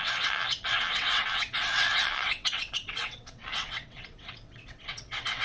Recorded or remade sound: remade